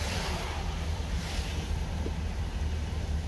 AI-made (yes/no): no